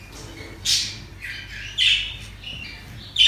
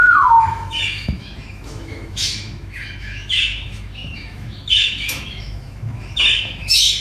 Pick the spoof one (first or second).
second